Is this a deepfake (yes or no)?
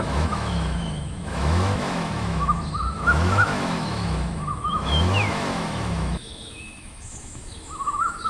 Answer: yes